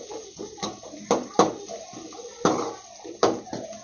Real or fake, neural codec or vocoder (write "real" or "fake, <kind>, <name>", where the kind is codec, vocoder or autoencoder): real